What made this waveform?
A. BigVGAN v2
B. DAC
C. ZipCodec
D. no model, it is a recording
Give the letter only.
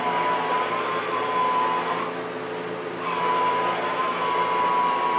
D